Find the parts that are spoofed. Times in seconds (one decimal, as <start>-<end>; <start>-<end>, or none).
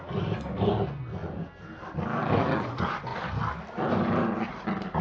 none